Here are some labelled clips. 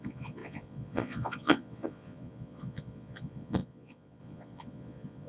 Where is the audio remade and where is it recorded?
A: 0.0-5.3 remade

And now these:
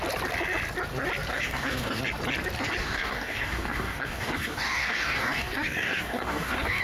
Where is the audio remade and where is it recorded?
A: 0.0-1.3 recorded; 1.3-2.0 remade; 2.0-2.8 recorded; 2.8-6.8 remade

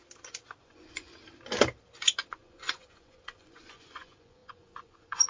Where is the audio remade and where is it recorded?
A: 0.0-0.6 recorded; 0.6-1.1 remade; 1.1-2.3 recorded; 2.3-5.3 remade

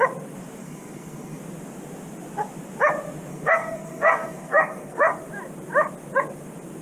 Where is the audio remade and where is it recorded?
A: 0.0-0.6 recorded; 0.6-1.4 remade; 1.4-3.3 recorded; 3.3-5.2 remade; 5.2-6.8 recorded

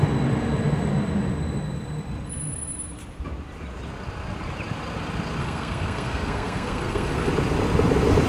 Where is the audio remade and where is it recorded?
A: 0.0-5.4 recorded; 5.4-7.3 remade; 7.3-8.3 recorded